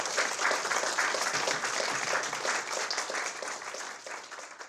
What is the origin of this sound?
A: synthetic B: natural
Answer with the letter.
B